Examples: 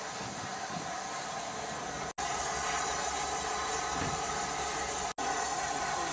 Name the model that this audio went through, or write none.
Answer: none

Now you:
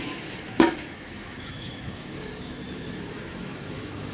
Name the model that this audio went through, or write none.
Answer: autoencoder, DAC-VAE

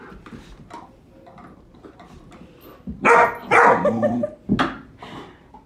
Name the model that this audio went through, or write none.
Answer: none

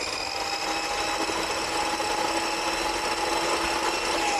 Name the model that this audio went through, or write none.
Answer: none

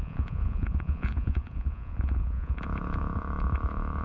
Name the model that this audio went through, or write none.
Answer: vocoder, Vocos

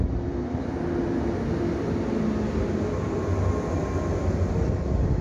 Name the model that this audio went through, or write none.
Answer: none